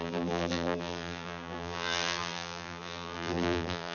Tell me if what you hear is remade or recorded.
remade